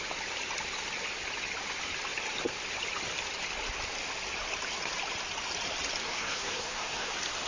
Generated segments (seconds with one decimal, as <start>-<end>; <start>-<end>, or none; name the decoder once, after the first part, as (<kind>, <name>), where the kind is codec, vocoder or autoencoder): 6.0-7.1 (codec, SNAC)